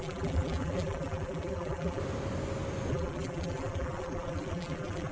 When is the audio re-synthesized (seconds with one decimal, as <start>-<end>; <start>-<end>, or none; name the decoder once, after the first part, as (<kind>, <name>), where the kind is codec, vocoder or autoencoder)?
0.0-2.0 (vocoder, BigVGAN v2); 2.9-5.1